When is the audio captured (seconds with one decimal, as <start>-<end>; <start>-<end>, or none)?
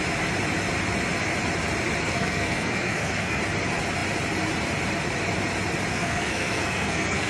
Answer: 0.0-2.0; 3.4-5.9